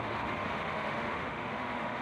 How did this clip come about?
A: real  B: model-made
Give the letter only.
B